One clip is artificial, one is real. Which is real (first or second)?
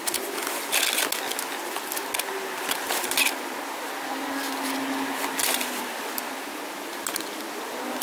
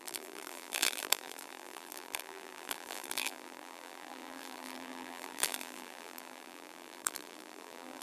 first